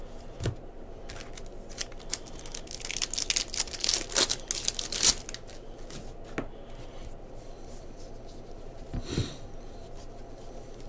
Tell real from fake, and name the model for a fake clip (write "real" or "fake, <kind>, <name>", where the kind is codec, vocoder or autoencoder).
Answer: real